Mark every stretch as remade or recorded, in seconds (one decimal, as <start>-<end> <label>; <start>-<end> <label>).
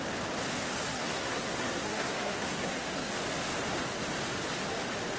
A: 0.0-0.9 recorded; 0.9-3.1 remade; 3.1-5.2 recorded